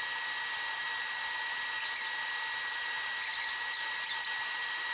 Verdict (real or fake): real